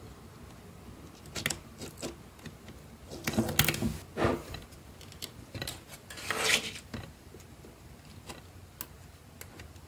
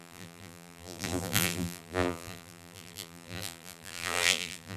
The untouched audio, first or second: first